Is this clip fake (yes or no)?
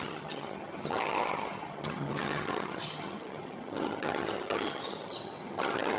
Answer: yes